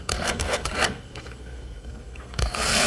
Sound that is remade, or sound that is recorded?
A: remade